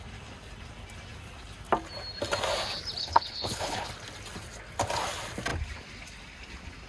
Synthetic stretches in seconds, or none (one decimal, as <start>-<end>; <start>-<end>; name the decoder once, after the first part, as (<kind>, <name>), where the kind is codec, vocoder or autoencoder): 3.0-3.9 (codec, HILCodec)